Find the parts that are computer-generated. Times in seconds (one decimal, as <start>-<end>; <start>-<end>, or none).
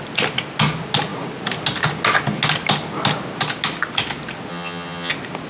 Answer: 4.5-5.1